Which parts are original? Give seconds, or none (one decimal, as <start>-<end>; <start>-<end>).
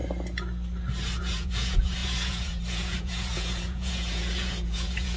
0.0-1.2